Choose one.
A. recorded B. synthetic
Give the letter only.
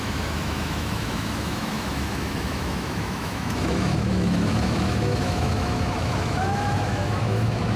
B